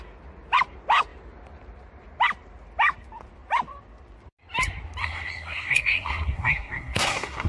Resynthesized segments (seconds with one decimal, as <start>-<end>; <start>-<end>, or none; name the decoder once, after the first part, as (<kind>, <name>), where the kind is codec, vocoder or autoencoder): 5.0-7.5 (codec, SNAC)